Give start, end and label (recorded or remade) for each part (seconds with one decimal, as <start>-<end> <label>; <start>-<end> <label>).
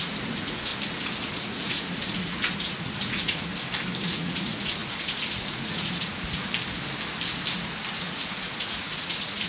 0.0-0.7 remade; 0.7-1.2 recorded; 1.2-3.5 remade; 3.5-4.0 recorded; 4.0-6.5 remade; 6.5-8.0 recorded; 8.0-9.5 remade